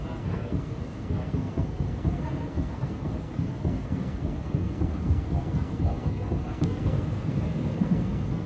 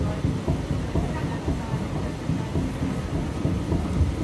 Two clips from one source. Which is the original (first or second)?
second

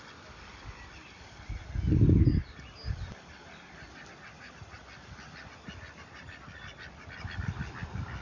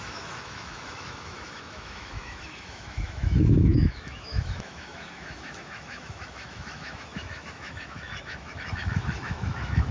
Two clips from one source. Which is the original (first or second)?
first